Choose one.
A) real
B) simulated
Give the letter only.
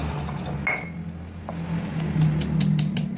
A